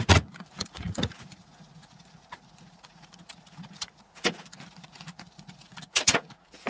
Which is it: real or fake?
fake